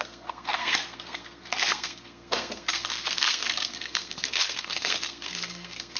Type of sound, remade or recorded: remade